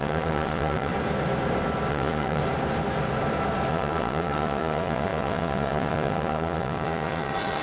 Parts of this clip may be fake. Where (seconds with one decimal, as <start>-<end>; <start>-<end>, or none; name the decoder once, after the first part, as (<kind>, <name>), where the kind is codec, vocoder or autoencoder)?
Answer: 0.0-0.9 (vocoder, Vocos); 1.9-2.4; 3.7-7.6